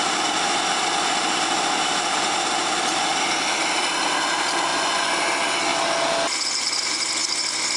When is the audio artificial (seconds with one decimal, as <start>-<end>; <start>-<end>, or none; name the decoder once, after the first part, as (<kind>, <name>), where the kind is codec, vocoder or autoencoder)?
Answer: 4.7-5.2 (vocoder, Vocos)